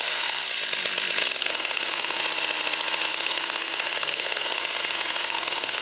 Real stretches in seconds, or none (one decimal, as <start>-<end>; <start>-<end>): 0.4-1.4; 2.2-3.1